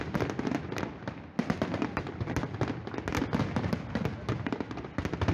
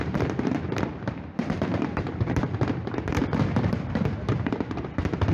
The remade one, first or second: second